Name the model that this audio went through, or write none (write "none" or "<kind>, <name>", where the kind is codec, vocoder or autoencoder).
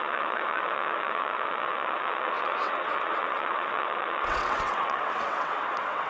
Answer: vocoder, WaveNeXt